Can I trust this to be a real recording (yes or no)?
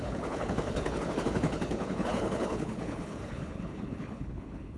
no